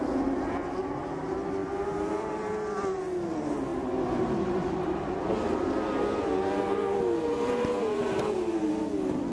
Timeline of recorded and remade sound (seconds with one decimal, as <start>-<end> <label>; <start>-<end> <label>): 0.0-9.3 recorded